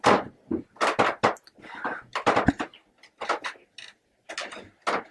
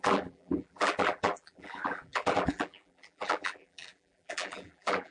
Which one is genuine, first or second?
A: first